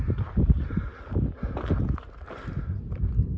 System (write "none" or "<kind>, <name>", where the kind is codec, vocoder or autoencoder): none